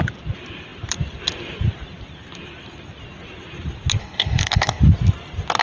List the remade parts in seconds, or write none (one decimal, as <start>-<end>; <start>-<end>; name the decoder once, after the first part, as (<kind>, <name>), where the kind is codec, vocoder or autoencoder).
4.0-4.8 (codec, HILCodec)